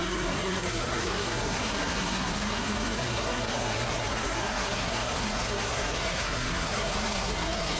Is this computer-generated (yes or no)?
yes